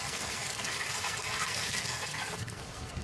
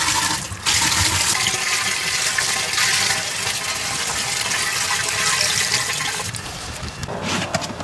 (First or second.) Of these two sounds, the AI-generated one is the first